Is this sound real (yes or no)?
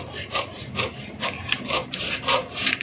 no